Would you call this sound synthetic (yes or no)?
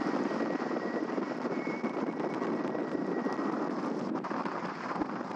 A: yes